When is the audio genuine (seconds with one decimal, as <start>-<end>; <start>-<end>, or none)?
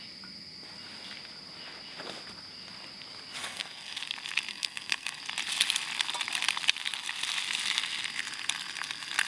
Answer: 0.0-3.4; 4.0-4.5; 5.2-9.3